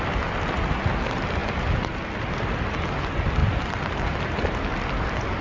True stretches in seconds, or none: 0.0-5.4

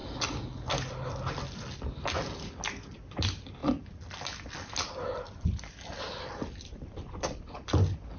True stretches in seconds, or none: 0.0-8.2

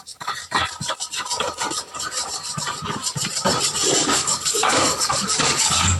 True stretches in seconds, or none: 0.4-4.0

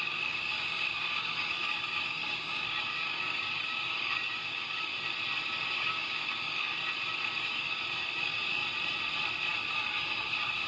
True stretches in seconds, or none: 4.9-5.7; 6.8-7.4; 8.6-9.7

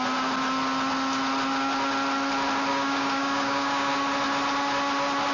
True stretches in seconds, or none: 0.0-2.7; 3.9-5.3

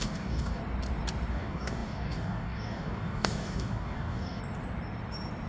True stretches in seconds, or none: 0.6-1.3; 4.4-5.5